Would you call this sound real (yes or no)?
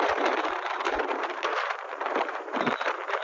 no